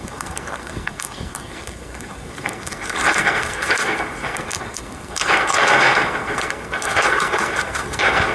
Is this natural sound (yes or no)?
no